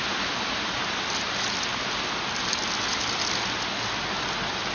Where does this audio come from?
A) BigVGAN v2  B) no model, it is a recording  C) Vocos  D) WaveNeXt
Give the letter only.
B